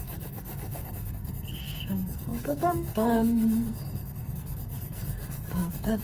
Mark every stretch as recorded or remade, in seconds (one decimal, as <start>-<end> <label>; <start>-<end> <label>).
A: 0.0-6.0 remade